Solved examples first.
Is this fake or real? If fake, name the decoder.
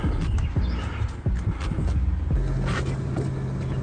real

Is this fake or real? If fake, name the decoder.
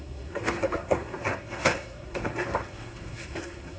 fake, codec, SNAC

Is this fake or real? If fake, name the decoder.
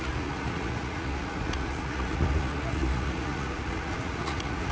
fake, vocoder, Vocos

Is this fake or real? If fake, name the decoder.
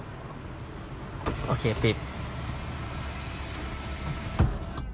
real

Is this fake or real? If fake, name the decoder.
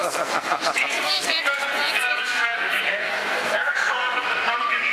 fake, codec, SNAC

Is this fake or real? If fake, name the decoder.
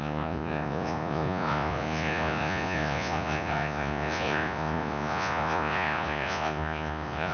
fake, vocoder, Vocos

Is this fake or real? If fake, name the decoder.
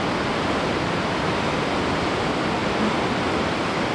real